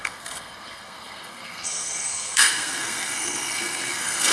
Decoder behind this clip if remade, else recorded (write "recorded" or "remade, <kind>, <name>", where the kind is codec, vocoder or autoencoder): remade, codec, SNAC